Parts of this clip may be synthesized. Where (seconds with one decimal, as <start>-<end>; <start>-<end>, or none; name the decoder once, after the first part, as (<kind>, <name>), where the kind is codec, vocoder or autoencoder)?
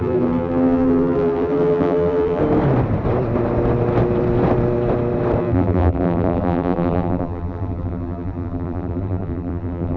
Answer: 0.0-2.4 (vocoder, BigVGAN v2); 5.4-10.0